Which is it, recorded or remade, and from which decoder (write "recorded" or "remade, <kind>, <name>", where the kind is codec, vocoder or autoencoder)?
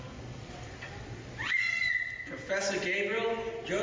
recorded